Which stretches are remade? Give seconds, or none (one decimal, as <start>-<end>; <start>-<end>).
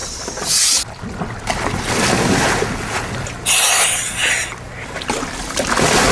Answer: none